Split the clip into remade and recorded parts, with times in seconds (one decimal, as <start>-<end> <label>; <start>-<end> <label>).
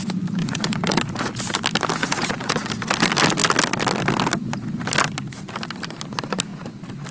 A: 0.0-0.4 recorded; 0.4-1.3 remade; 1.3-2.0 recorded; 2.0-2.7 remade; 2.7-7.1 recorded